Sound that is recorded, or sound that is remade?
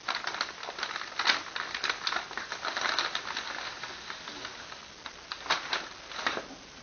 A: recorded